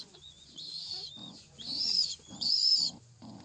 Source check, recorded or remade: remade